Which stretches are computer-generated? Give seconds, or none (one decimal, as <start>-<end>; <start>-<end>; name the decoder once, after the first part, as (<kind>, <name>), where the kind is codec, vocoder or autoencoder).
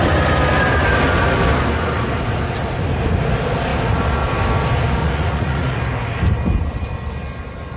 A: 5.0-5.8 (vocoder, Vocos)